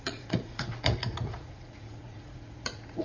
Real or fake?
fake